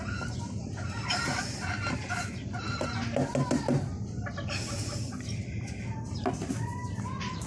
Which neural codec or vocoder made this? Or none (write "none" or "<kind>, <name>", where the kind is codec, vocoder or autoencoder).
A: none